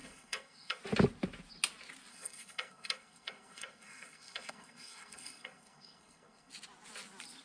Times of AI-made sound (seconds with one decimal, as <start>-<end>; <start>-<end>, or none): 0.0-0.8; 2.1-6.5